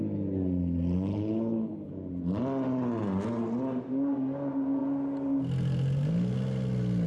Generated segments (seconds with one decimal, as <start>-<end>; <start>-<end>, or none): 1.1-1.9